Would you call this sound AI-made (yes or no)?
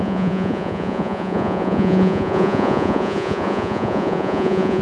yes